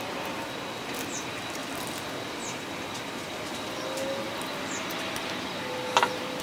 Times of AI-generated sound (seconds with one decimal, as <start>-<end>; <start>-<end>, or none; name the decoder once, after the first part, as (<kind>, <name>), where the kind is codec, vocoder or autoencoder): 0.0-6.4 (vocoder, BigVGAN v2)